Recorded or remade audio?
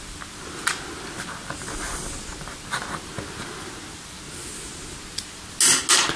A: recorded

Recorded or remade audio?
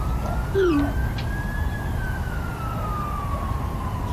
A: recorded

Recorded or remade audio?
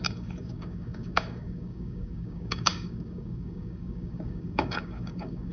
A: remade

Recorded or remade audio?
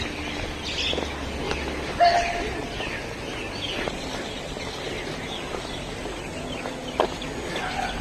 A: recorded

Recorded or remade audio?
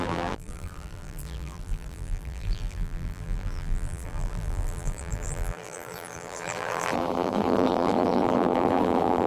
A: remade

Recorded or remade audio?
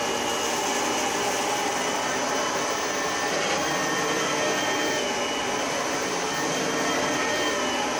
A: recorded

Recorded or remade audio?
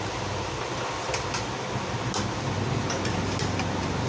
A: recorded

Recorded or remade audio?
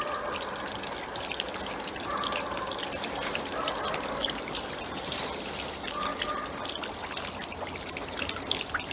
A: recorded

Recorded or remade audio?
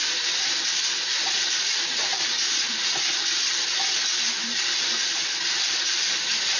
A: remade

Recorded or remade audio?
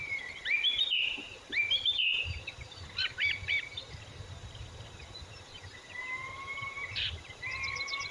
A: remade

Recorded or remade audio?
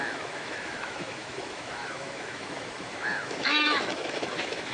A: remade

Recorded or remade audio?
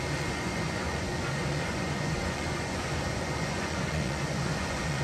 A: remade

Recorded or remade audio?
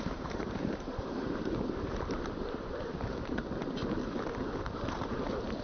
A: remade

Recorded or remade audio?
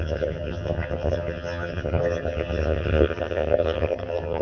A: remade